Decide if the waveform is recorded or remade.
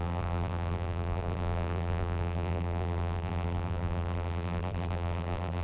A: remade